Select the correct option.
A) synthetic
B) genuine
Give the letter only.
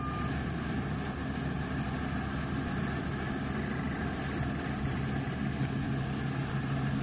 B